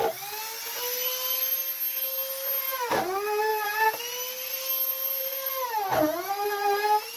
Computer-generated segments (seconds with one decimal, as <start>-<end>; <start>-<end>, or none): 3.5-4.0; 4.9-6.3